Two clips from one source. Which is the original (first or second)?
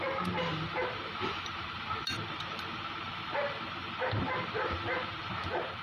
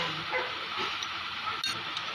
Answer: second